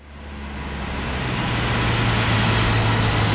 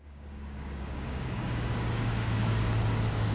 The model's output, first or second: second